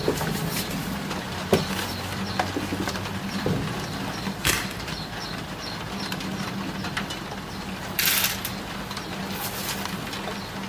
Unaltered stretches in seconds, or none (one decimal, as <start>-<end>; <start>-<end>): 0.0-2.7; 7.3-10.7